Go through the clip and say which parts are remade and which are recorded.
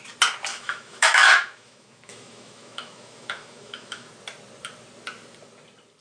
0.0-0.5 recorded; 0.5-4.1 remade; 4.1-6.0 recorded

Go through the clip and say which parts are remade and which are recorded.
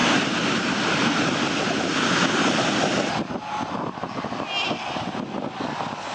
0.0-6.1 recorded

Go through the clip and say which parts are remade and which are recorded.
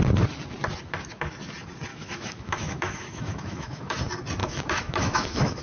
0.0-1.9 recorded; 1.9-4.0 remade; 4.0-4.4 recorded; 4.4-5.6 remade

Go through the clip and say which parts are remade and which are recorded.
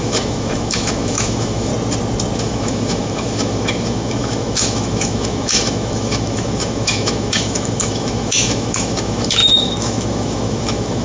0.0-1.7 remade; 1.7-2.4 recorded; 2.4-11.0 remade